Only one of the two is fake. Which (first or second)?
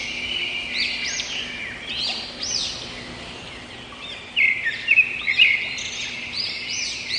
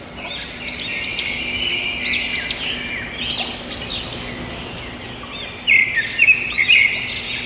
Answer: first